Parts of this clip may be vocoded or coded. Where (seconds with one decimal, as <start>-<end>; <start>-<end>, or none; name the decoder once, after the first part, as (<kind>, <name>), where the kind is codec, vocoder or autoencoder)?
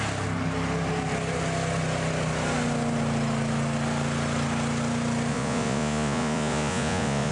5.3-7.3 (vocoder, Vocos)